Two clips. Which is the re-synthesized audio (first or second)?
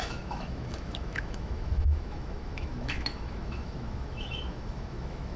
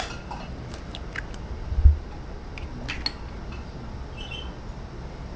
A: first